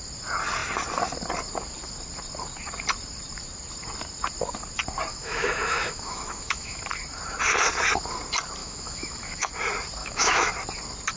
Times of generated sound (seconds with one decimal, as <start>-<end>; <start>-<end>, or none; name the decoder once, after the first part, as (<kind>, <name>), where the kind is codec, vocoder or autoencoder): 5.1-6.8 (autoencoder, DAC-VAE); 8.6-9.5; 10.0-10.5